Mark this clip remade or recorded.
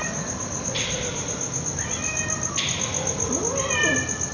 recorded